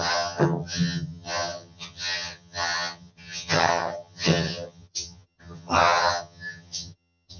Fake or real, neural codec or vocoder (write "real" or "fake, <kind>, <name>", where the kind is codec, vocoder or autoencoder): fake, vocoder, HiFi-GAN